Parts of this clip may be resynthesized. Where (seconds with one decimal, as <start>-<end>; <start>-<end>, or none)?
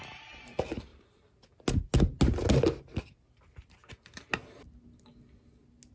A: none